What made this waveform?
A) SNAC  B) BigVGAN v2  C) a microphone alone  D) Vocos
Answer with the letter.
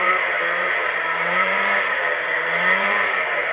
B